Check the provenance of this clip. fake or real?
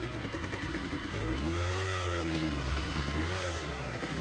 fake